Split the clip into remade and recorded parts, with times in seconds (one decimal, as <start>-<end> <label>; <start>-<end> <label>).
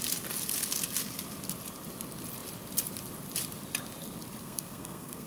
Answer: 0.0-4.4 recorded; 4.4-5.3 remade